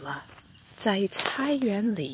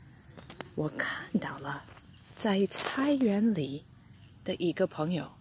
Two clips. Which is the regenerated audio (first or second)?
first